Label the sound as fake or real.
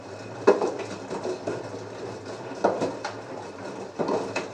real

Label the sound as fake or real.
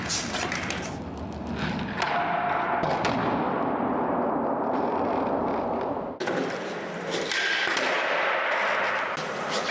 real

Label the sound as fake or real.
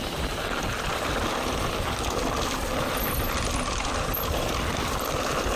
real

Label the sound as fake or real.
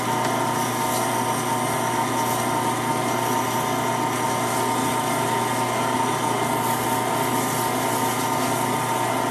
real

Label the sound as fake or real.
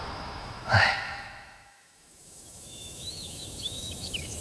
fake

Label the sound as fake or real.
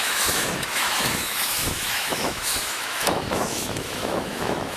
fake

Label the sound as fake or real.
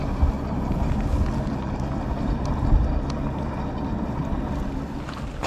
real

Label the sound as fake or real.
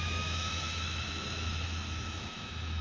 fake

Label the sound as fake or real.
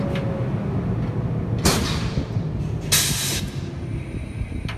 real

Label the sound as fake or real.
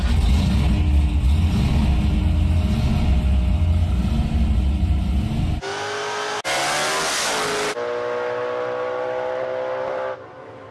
real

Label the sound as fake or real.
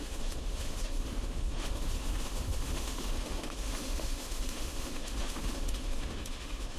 fake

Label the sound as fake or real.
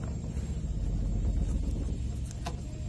real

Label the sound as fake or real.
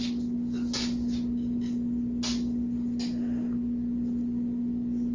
real